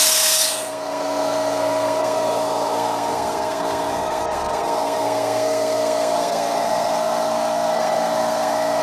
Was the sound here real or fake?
fake